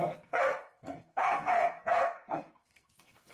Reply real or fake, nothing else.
fake